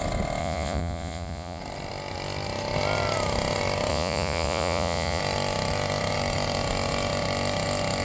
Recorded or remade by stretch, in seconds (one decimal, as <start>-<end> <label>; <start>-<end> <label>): 0.0-0.4 recorded; 0.4-1.6 remade; 1.6-3.9 recorded; 3.9-5.2 remade; 5.2-8.0 recorded